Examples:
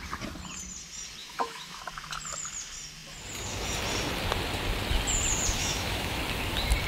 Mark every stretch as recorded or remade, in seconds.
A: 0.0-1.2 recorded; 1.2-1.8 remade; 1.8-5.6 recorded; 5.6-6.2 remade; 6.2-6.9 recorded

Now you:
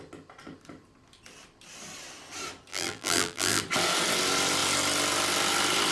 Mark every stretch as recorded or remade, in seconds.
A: 0.0-2.7 recorded; 2.7-3.6 remade; 3.6-5.9 recorded

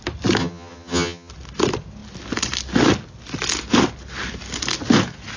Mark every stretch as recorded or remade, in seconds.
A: 0.0-0.4 recorded; 0.4-1.3 remade; 1.3-5.4 recorded

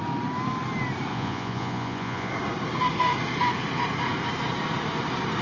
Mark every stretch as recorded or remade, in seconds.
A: 0.0-1.1 recorded; 1.1-2.3 remade; 2.3-5.4 recorded

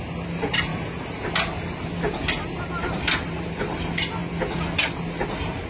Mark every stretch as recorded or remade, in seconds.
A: 0.0-5.7 recorded

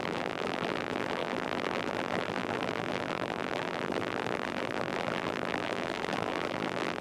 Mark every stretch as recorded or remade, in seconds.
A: 0.0-7.0 remade

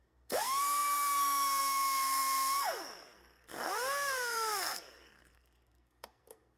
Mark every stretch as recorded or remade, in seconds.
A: 0.0-6.6 remade